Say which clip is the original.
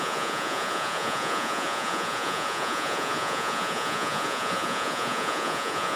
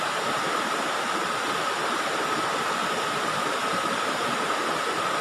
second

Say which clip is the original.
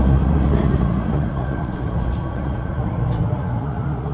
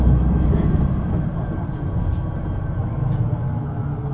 second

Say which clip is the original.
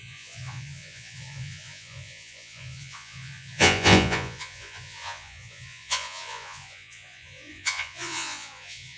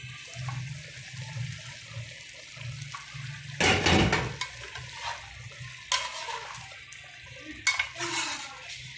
second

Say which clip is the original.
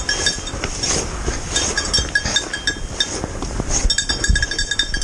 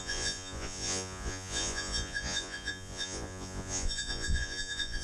first